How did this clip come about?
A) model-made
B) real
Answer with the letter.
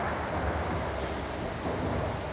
B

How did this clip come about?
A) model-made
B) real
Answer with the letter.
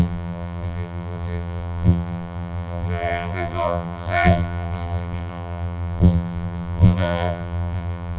A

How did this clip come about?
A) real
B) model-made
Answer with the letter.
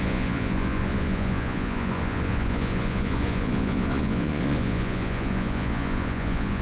B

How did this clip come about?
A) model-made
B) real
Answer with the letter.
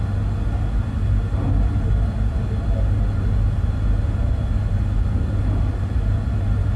B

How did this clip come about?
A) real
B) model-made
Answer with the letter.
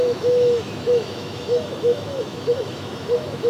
B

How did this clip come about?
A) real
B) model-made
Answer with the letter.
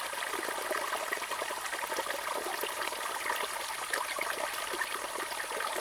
A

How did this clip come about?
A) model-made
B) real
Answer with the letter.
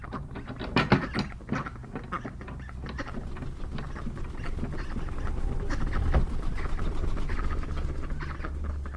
B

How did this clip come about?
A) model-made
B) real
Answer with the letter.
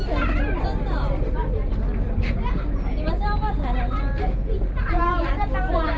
B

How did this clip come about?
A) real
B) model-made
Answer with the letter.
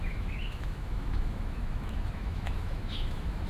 B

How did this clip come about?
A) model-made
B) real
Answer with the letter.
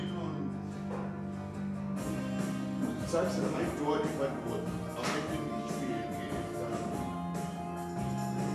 B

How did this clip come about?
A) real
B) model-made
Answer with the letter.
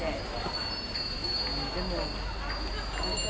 A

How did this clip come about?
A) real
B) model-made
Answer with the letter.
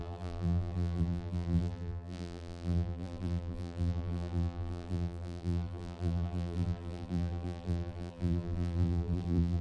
B